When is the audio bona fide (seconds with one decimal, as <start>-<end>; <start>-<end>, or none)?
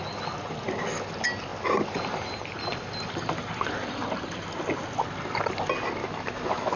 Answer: 0.0-6.0